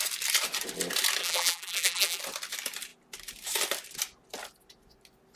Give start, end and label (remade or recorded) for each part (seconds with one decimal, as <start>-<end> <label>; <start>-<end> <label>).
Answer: 0.0-1.2 recorded; 1.2-2.2 remade; 2.2-5.4 recorded